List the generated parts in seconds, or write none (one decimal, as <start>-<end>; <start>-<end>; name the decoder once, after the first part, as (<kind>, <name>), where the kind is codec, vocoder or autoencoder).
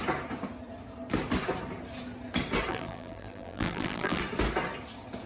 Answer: 2.7-4.2 (vocoder, BigVGAN v2)